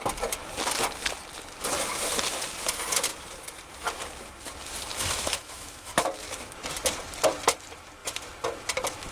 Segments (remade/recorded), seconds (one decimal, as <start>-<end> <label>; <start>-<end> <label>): 0.0-4.9 recorded; 4.9-6.1 remade; 6.1-9.1 recorded